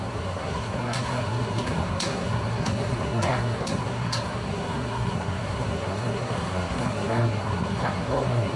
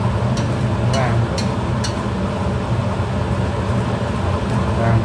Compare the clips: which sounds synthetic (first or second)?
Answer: first